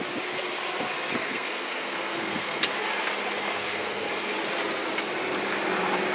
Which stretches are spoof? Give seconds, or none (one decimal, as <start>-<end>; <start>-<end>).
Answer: 1.2-2.6; 3.5-4.1